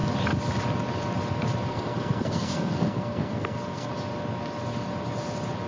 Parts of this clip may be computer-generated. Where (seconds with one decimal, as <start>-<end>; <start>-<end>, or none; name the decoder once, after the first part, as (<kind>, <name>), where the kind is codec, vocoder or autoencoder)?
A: 1.7-3.9 (codec, SNAC)